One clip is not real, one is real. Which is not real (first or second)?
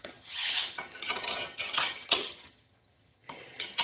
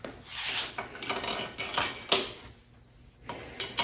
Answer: first